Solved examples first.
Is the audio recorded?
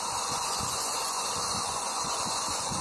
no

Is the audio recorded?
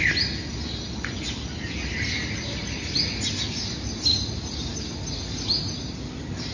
yes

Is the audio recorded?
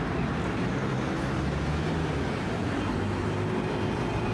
yes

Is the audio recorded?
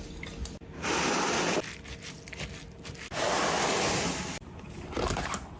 yes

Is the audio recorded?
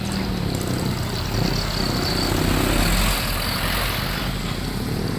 yes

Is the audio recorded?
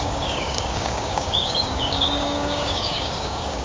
no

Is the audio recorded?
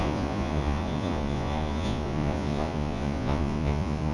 no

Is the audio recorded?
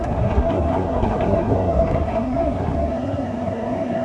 no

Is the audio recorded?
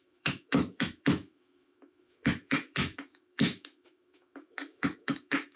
no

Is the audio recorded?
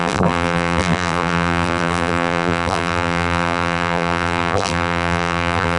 no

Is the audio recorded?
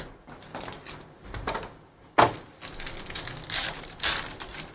yes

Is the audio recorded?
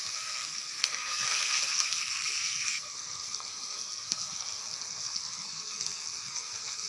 no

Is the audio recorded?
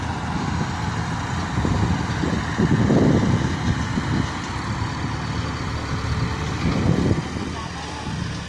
yes